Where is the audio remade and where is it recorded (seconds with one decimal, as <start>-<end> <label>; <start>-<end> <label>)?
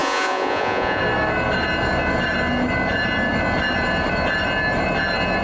0.0-1.0 remade; 1.0-5.4 recorded